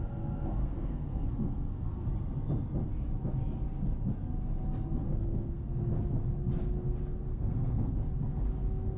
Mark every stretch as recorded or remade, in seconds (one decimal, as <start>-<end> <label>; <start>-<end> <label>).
0.0-0.6 recorded; 0.6-2.1 remade; 2.1-5.0 recorded; 5.0-5.9 remade; 5.9-7.3 recorded; 7.3-7.9 remade; 7.9-9.0 recorded